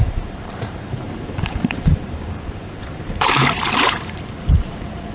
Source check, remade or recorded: remade